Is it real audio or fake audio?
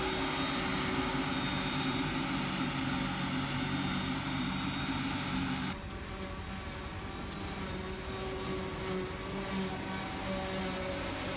real